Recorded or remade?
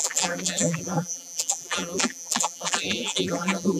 remade